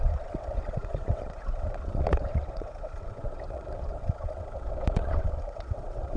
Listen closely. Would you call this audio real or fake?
fake